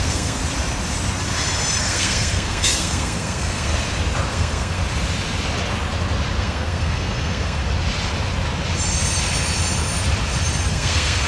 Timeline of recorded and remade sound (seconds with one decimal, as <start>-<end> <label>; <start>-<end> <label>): 0.0-0.4 remade; 0.4-1.8 recorded; 1.8-3.7 remade; 3.7-4.3 recorded; 4.3-4.8 remade; 4.8-6.4 recorded; 6.4-7.6 remade; 7.6-10.7 recorded; 10.7-11.3 remade